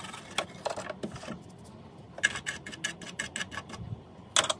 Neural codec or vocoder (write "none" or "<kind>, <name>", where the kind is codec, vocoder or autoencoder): none